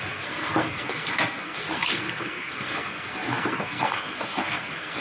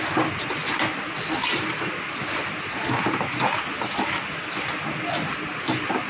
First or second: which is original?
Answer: second